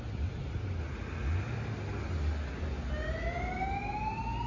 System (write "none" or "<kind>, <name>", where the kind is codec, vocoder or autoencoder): none